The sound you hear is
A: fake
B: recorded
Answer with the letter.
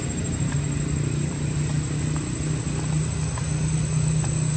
B